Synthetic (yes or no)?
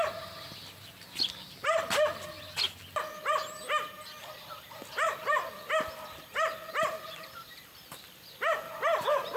no